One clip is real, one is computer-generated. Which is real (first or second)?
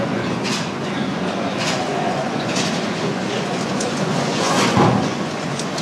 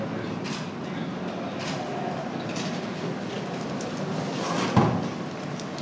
second